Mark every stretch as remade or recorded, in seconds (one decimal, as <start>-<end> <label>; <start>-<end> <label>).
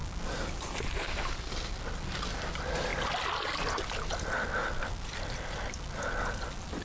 0.0-6.8 recorded